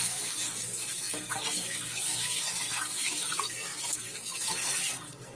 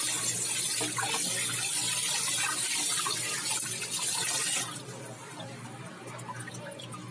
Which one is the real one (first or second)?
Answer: second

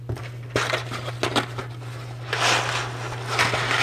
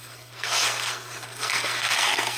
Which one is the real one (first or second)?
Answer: first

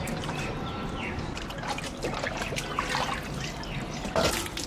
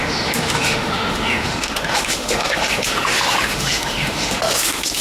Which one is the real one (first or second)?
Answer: first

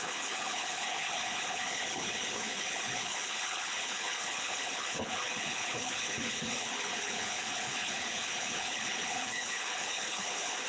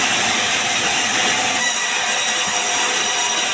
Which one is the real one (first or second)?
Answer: second